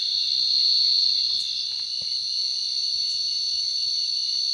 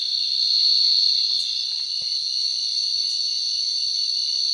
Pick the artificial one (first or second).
second